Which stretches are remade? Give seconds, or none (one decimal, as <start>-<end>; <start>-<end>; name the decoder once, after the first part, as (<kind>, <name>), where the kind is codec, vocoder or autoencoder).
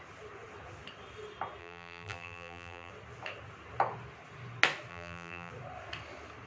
1.6-2.9 (vocoder, BigVGAN v2); 4.9-5.5